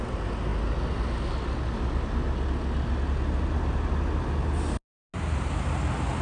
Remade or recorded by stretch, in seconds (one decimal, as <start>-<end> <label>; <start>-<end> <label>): 0.0-6.2 recorded